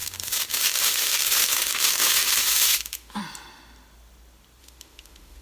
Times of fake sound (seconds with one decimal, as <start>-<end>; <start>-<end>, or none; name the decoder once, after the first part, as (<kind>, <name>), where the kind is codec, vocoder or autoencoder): 0.0-3.2 (autoencoder, DAC-VAE); 4.6-5.4